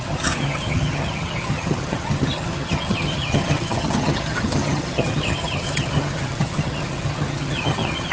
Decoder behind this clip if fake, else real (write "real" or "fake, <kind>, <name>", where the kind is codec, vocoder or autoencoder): fake, vocoder, HiFi-GAN